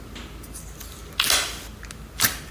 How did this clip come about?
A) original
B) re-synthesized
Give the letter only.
A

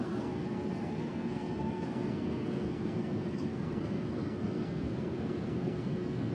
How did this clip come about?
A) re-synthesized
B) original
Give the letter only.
A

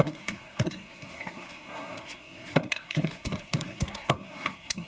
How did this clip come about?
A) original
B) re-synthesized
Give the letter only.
B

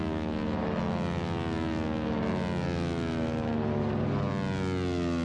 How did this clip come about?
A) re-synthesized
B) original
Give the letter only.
B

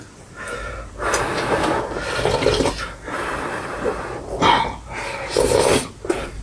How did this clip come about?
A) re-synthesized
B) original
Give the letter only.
B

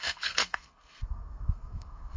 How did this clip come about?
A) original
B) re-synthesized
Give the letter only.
B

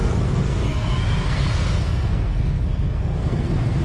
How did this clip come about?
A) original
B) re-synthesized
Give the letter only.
B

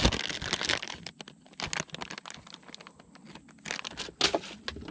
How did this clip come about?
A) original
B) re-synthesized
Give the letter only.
A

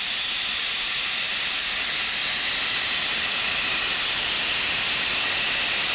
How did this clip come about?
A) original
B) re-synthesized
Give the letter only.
A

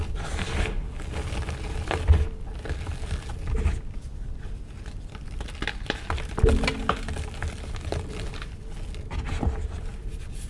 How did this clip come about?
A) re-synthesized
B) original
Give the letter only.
B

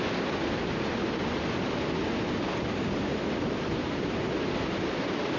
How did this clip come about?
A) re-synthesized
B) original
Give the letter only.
B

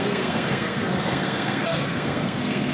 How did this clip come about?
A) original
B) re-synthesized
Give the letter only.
B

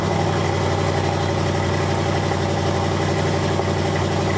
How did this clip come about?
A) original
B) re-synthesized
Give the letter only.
A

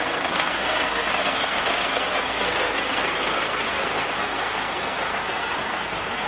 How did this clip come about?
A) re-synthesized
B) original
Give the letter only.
A